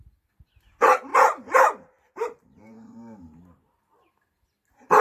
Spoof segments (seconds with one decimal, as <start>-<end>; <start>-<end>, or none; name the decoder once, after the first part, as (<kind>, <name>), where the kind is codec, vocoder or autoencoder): 1.1-4.1 (vocoder, BigVGAN v2)